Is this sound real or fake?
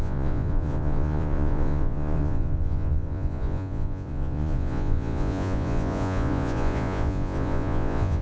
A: fake